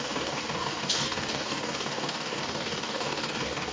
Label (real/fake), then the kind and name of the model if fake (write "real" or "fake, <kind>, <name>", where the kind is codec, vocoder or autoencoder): fake, codec, DAC